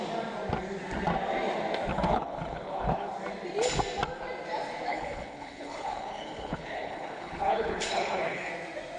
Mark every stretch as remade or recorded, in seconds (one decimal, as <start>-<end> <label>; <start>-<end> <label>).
0.0-1.9 recorded; 1.9-3.1 remade; 3.1-4.9 recorded; 4.9-8.5 remade; 8.5-9.0 recorded